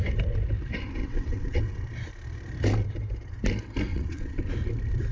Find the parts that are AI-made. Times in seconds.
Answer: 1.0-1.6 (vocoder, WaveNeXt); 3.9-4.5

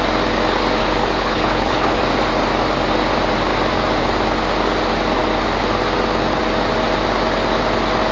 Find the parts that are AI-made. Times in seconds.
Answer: 0.8-2.0 (codec, HILCodec)

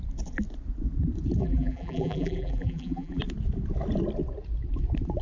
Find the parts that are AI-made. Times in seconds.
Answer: 1.4-3.2 (vocoder, BigVGAN v2)

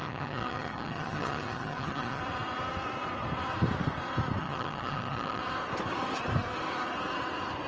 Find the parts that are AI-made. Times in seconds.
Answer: 0.0-2.2 (vocoder, HiFi-GAN); 4.4-5.4